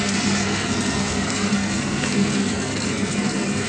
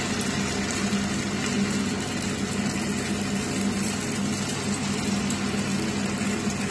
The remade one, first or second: first